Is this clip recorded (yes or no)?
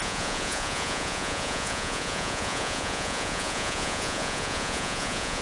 no